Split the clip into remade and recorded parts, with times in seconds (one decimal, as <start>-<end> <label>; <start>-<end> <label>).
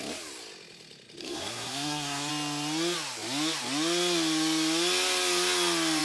0.0-1.2 recorded; 1.2-2.3 remade; 2.3-6.0 recorded